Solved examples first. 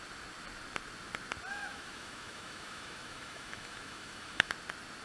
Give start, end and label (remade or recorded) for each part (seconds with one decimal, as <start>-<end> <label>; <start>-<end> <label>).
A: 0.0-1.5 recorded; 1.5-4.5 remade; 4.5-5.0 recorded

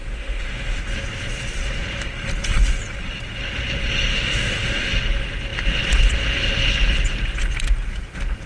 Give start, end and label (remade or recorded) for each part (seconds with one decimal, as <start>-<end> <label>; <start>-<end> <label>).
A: 0.0-0.8 remade; 0.8-4.1 recorded; 4.1-4.9 remade; 4.9-8.5 recorded

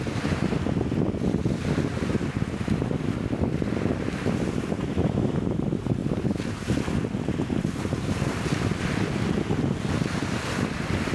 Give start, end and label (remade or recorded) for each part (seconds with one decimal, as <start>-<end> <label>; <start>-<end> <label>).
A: 0.0-11.1 recorded